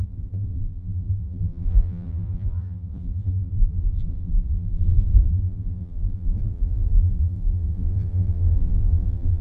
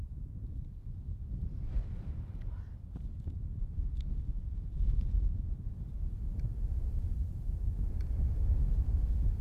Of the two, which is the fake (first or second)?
first